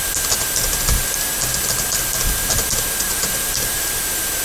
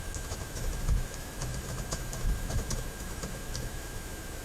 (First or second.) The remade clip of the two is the second